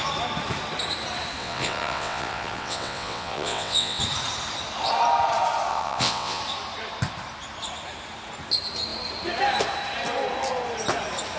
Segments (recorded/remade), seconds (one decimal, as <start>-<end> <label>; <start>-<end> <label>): 0.0-1.4 recorded; 1.4-4.0 remade; 4.0-5.7 recorded; 5.7-6.4 remade; 6.4-11.4 recorded

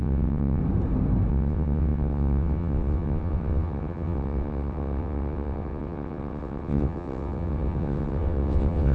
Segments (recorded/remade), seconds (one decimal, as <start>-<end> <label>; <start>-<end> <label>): 0.0-0.6 remade; 0.6-1.3 recorded; 1.3-8.9 remade

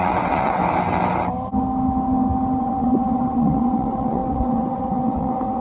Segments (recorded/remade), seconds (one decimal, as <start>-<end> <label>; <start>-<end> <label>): 0.0-0.6 remade; 0.6-2.6 recorded; 2.6-5.6 remade